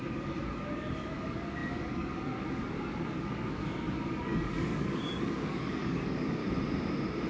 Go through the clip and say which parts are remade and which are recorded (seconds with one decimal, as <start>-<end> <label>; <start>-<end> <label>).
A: 0.0-6.4 remade; 6.4-7.3 recorded